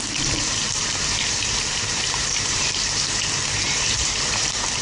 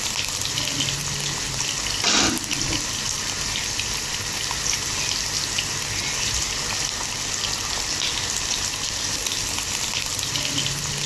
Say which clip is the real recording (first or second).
second